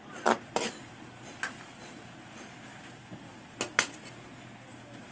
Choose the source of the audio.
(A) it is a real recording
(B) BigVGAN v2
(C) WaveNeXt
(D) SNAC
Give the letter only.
A